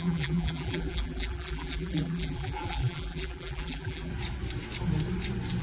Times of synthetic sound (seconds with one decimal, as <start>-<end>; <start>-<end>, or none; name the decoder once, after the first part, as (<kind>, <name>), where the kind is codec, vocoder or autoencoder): 0.0-4.1 (vocoder, BigVGAN v2)